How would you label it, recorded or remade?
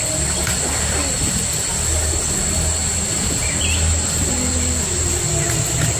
recorded